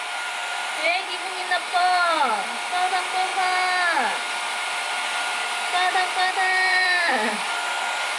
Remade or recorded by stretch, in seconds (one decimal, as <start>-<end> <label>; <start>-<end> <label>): 0.0-0.4 recorded; 0.4-2.3 remade; 2.3-6.7 recorded; 6.7-7.6 remade; 7.6-8.2 recorded